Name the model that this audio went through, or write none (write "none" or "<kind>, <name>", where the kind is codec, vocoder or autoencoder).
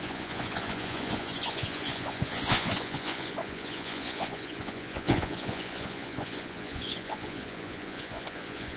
vocoder, Vocos